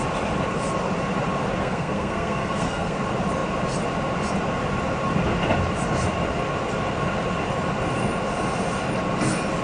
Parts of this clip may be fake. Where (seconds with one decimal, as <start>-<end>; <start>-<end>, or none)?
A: 1.6-3.0